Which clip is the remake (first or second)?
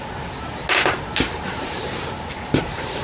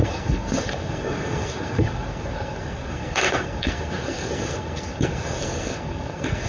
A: second